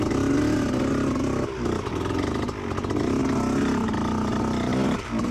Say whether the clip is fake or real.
real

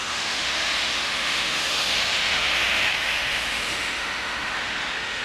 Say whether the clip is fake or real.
fake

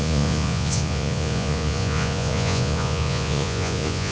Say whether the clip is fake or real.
fake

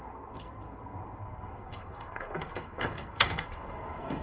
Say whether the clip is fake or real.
fake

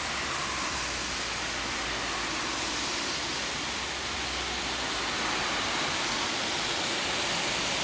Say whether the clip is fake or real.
real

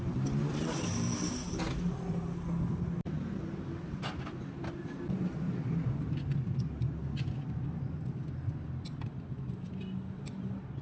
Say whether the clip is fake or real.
real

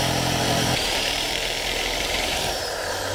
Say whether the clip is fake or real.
fake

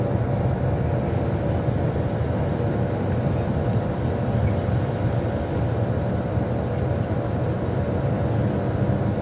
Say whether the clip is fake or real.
real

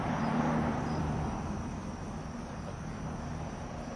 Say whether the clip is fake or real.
fake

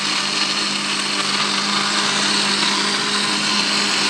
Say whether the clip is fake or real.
real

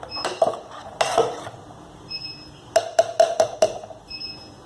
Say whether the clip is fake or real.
real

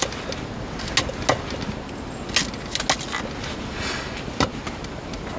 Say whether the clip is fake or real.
real